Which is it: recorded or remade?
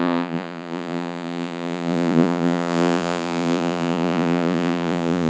remade